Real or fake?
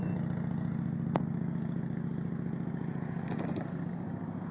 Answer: real